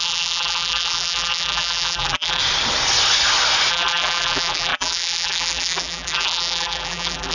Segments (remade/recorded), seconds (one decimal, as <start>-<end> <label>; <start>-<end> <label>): 0.0-2.4 remade; 2.4-3.7 recorded; 3.7-7.3 remade